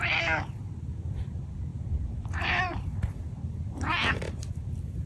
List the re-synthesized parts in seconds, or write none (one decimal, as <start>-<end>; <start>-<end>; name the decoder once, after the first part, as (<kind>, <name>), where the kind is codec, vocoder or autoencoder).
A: 1.7-5.1 (vocoder, BigVGAN v2)